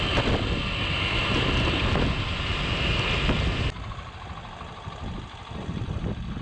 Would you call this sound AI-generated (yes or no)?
no